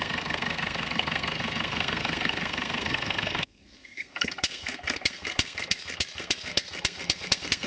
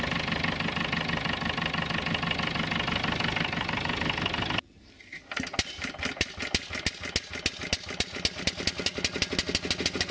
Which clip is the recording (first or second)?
second